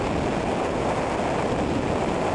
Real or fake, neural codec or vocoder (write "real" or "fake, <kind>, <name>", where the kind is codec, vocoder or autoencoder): real